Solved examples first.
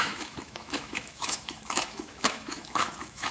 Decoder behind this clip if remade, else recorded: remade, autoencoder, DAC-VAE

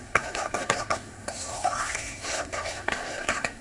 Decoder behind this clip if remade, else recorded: remade, codec, SNAC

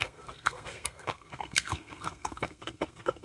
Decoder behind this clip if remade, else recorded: remade, codec, SNAC